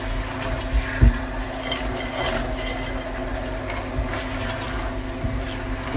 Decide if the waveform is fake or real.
real